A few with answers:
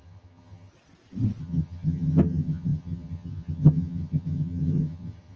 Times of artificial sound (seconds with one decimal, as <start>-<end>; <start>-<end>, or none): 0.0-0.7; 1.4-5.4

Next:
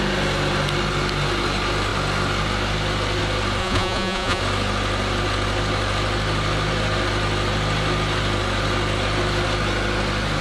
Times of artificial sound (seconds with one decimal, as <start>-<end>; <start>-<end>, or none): 3.6-4.4

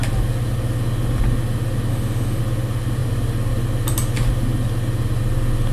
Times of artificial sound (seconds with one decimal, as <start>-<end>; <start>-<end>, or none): 1.9-2.4

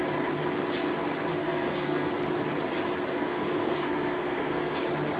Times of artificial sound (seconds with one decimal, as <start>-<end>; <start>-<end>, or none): 1.3-2.1; 3.1-4.8

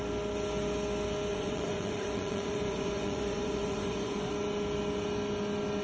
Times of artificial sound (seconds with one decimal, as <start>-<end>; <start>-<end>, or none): 1.3-4.3